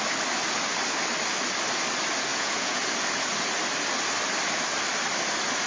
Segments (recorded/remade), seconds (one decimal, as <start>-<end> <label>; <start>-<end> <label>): 0.0-2.3 recorded; 2.3-2.8 remade; 2.8-5.7 recorded